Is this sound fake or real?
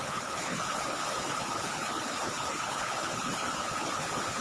fake